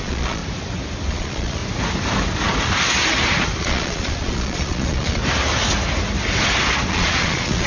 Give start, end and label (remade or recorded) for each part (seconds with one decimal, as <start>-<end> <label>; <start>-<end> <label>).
0.0-0.4 remade; 0.4-1.1 recorded; 1.1-1.6 remade; 1.6-3.6 recorded; 3.6-5.2 remade; 5.2-6.9 recorded; 6.9-7.7 remade